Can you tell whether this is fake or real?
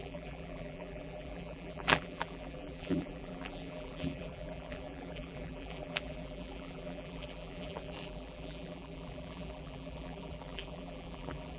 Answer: fake